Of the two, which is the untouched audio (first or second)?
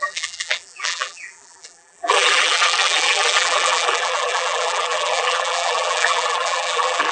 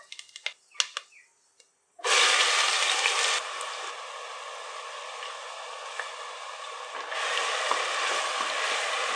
second